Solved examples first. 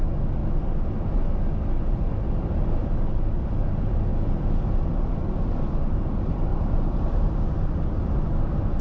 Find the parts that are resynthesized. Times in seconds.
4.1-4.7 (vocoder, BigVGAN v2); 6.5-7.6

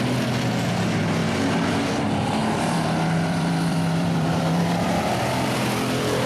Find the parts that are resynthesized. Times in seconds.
1.2-1.9 (vocoder, BigVGAN v2); 2.4-6.3

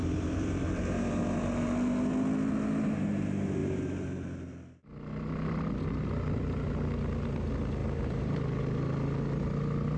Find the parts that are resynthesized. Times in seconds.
0.0-1.2 (vocoder, BigVGAN v2); 7.8-8.4